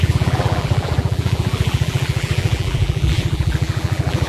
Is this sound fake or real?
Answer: fake